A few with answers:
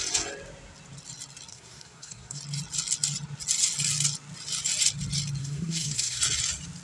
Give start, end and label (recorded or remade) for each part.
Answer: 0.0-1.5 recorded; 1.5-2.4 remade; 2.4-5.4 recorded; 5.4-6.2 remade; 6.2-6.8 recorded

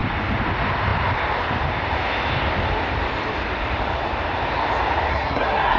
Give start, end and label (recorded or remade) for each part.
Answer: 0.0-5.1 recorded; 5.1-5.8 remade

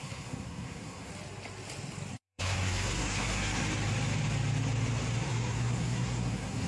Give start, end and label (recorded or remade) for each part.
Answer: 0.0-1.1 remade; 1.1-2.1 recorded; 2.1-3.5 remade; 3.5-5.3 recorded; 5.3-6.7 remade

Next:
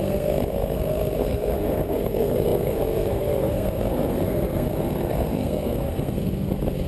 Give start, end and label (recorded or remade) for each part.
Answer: 0.0-6.9 remade

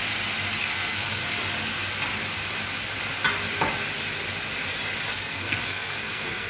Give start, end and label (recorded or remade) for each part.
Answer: 0.0-0.6 recorded; 0.6-1.2 remade; 1.2-5.1 recorded; 5.1-6.5 remade

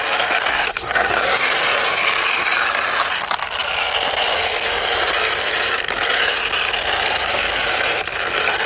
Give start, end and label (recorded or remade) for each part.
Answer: 0.0-0.5 recorded; 0.5-1.4 remade; 1.4-8.7 recorded